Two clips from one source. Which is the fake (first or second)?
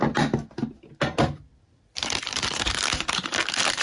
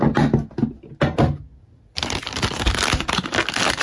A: first